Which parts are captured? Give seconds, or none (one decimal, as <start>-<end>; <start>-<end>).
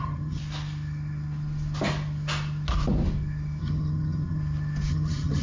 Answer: 0.4-3.6; 4.4-4.9